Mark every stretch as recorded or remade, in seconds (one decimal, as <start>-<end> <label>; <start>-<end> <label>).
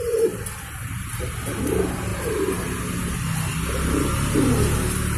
0.0-5.2 recorded